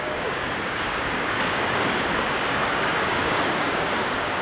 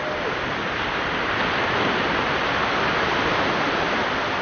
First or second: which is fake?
first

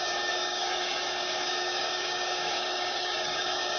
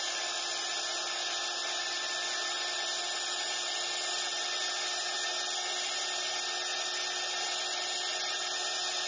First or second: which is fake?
first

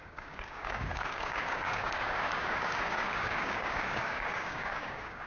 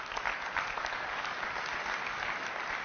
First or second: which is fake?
first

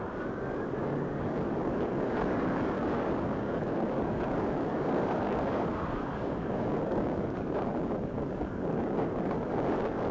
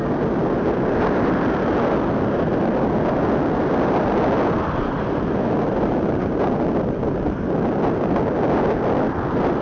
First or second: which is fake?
first